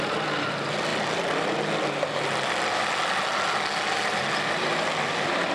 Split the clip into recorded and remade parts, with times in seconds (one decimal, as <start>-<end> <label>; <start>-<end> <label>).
0.0-5.5 recorded